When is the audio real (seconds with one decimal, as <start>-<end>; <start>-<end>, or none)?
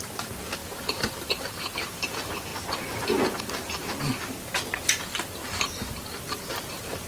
2.5-3.3; 5.4-6.4